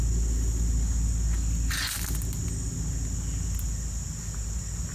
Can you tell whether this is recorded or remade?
recorded